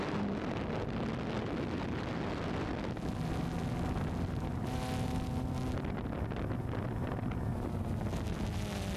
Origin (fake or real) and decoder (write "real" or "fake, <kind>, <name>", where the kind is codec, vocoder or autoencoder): real